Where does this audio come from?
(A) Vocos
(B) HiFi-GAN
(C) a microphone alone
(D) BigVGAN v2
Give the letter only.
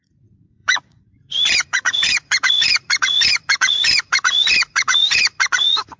A